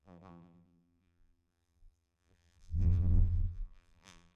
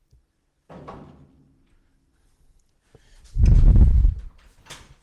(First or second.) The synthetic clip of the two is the first